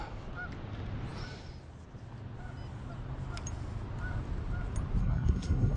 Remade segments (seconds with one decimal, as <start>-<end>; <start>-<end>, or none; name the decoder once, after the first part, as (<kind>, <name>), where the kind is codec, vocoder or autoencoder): 5.0-5.8 (codec, SNAC)